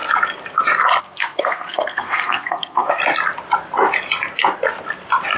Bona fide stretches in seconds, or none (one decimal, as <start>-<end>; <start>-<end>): 0.0-1.0; 3.0-5.4